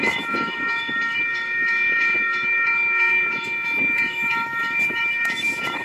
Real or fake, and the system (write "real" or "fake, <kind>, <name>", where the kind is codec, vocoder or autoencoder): fake, autoencoder, DAC-VAE